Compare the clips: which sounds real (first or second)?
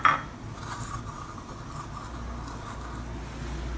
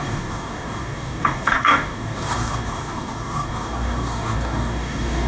first